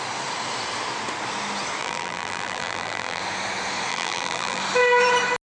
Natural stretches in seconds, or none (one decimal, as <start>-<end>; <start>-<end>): 0.0-1.8; 3.2-3.9; 4.6-5.4